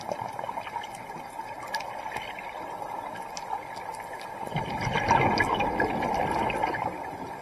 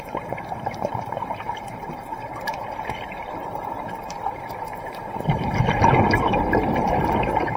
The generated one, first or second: second